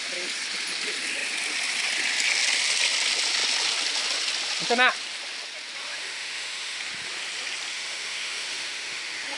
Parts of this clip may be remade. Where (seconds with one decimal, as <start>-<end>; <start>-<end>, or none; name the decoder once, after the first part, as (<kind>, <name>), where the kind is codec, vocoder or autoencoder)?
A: 5.8-6.8 (autoencoder, DAC-VAE); 7.7-9.4